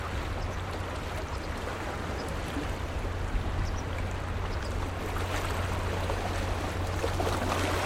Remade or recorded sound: recorded